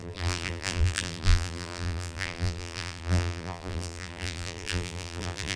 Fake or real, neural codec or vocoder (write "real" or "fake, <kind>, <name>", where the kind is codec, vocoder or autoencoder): fake, vocoder, BigVGAN v2